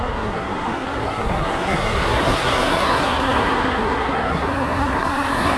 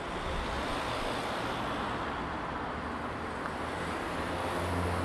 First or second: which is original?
second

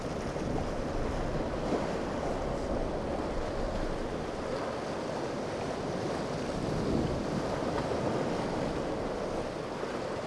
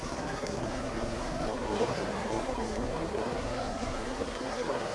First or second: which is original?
first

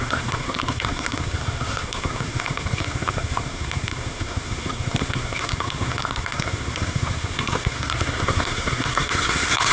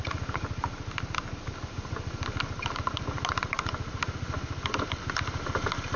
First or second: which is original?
second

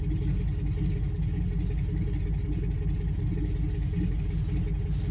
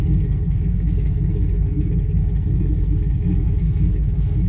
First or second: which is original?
first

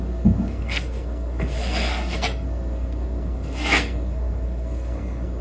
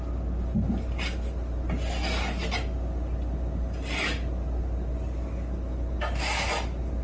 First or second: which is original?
second